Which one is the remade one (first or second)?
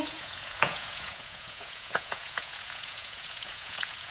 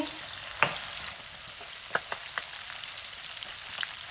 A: first